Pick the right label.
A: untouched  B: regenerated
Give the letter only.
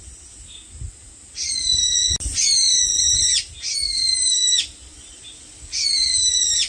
A